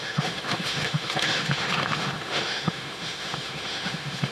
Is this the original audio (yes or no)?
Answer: no